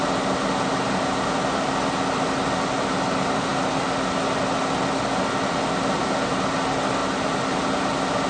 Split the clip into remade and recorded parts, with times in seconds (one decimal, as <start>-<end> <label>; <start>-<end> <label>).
0.0-8.3 recorded